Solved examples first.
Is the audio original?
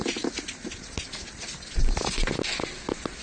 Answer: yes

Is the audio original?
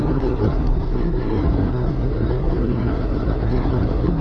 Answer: no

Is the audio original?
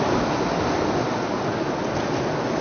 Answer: yes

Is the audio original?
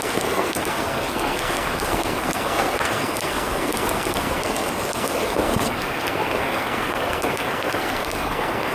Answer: no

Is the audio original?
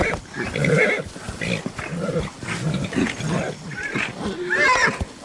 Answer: yes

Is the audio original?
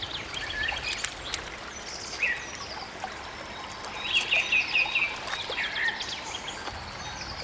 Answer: yes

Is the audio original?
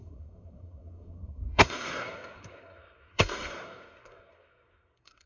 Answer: no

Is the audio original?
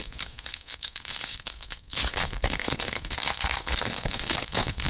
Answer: no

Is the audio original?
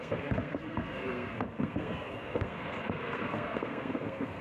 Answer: no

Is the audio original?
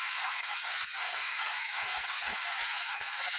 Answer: no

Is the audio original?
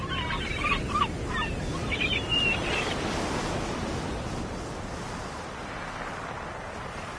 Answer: yes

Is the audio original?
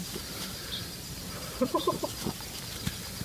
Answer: yes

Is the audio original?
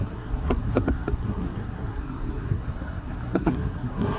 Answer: no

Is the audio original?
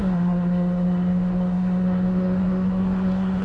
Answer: no